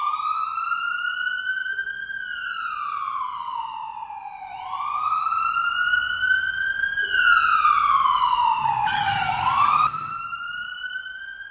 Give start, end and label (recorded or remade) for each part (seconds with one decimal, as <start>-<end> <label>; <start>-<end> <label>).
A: 0.0-3.8 remade; 3.8-4.4 recorded; 4.4-6.0 remade; 6.0-7.9 recorded; 7.9-11.5 remade